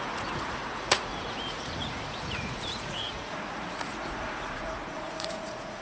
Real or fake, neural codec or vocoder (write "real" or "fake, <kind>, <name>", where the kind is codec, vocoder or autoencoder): fake, vocoder, Vocos